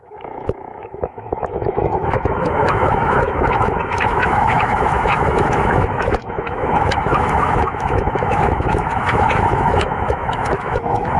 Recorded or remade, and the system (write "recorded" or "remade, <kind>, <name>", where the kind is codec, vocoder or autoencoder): remade, autoencoder, DAC-VAE